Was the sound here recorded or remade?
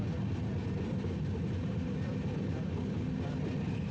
recorded